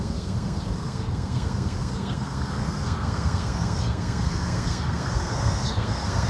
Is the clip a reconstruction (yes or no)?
yes